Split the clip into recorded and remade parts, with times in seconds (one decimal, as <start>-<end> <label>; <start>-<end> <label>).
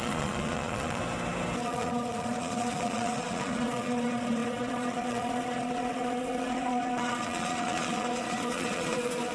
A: 0.0-1.0 remade; 1.0-1.6 recorded; 1.6-9.3 remade